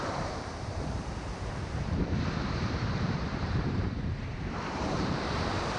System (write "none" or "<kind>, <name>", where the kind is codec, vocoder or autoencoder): vocoder, BigVGAN v2